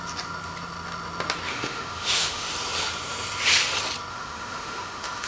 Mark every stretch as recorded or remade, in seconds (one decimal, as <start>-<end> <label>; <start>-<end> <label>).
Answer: 0.0-1.5 recorded; 1.5-2.5 remade; 2.5-4.1 recorded; 4.1-5.3 remade